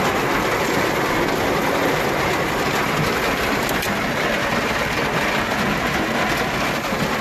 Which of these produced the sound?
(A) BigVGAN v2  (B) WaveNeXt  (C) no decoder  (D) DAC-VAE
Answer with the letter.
C